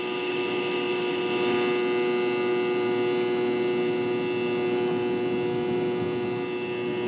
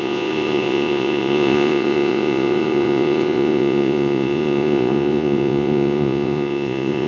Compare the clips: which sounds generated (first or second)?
second